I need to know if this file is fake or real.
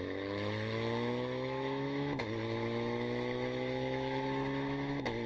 fake